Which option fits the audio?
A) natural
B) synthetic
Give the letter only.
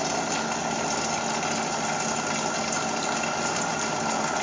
A